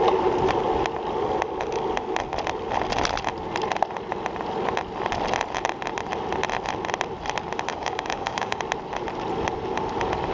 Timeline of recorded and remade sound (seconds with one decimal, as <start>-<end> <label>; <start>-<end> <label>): 0.0-7.7 recorded; 7.7-8.6 remade; 8.6-10.3 recorded